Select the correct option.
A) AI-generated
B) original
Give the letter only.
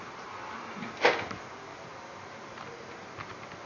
B